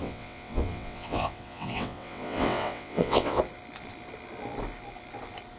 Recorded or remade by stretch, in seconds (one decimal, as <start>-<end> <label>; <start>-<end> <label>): 0.0-3.4 remade; 3.4-5.6 recorded